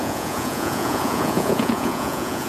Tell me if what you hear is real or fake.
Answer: fake